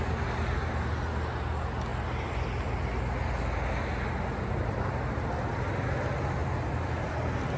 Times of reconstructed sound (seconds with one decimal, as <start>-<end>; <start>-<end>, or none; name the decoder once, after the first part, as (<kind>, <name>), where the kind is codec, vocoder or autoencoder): none

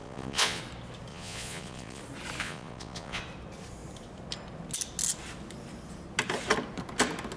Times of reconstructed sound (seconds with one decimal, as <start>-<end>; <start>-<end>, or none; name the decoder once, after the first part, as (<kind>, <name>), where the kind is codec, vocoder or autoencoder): 0.0-0.6 (vocoder, Vocos); 1.1-2.0; 2.4-3.2

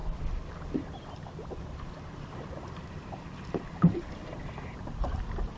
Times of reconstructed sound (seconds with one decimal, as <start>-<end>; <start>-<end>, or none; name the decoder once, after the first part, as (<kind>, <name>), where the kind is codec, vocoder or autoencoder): 0.0-2.9 (vocoder, BigVGAN v2)

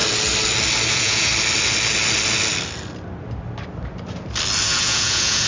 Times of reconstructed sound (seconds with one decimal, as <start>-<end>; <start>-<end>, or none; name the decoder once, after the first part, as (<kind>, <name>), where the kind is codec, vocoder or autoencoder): 0.9-1.3 (vocoder, Vocos); 4.6-5.5

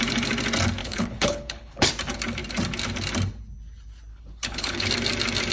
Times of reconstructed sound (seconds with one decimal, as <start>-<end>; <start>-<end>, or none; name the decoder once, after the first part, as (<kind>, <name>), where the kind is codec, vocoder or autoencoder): 0.8-1.9 (codec, HILCodec); 4.1-4.9